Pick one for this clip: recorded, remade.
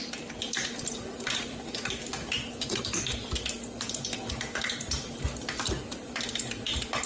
recorded